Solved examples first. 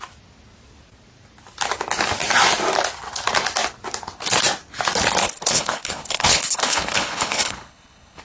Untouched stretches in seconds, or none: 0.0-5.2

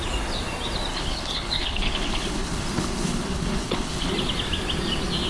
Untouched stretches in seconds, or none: 0.0-0.9; 4.1-5.3

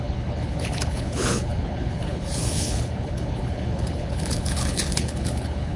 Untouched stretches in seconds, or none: none

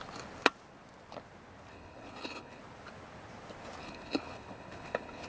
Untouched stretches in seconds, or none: 0.0-1.7; 2.6-3.8

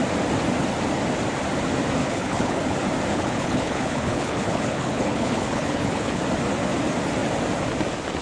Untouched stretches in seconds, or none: 0.0-2.0; 2.6-3.1; 6.2-8.2

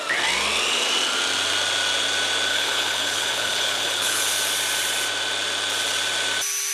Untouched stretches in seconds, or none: 0.0-2.5; 4.2-6.7